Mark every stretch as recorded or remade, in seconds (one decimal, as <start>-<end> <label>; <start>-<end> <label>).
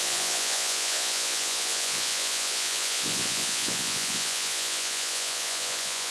0.0-6.1 remade